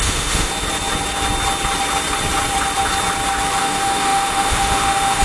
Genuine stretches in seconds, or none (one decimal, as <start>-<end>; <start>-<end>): 0.5-3.6